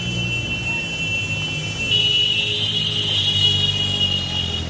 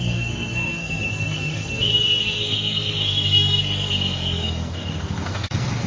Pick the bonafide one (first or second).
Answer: first